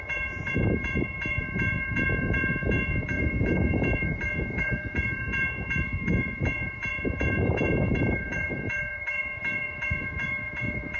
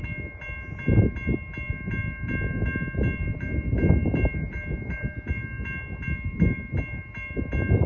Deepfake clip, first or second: first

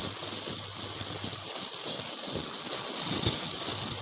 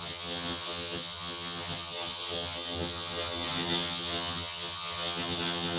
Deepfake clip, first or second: second